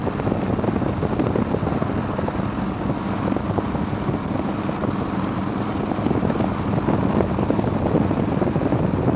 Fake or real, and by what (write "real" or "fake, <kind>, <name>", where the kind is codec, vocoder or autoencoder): real